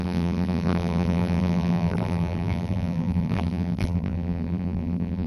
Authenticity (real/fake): fake